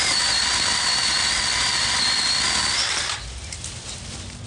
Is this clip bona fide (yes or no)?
yes